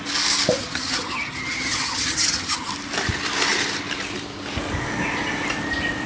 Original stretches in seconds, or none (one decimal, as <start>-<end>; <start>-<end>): 0.0-0.6; 2.7-6.1